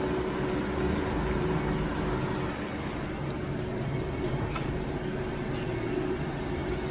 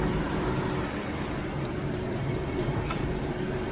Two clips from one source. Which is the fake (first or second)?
second